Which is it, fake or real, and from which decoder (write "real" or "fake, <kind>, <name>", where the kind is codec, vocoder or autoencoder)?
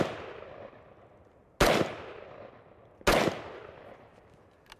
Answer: real